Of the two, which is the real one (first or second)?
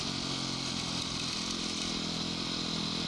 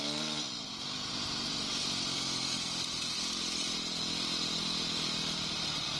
first